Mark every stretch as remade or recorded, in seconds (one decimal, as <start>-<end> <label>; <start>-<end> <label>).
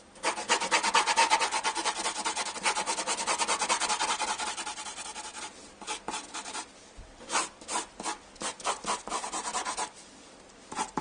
0.0-1.2 recorded; 1.2-1.9 remade; 1.9-11.0 recorded